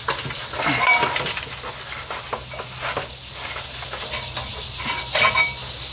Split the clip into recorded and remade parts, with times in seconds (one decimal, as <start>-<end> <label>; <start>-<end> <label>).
0.0-5.9 recorded